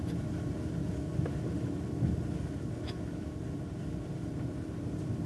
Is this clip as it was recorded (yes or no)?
yes